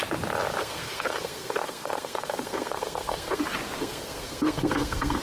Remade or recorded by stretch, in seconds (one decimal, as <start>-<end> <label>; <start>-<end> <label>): 0.0-0.6 recorded; 0.6-3.4 remade; 3.4-3.8 recorded; 3.8-5.2 remade